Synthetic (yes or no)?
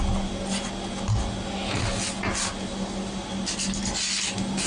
no